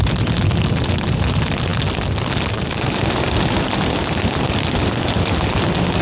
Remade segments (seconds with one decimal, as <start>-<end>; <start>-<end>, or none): none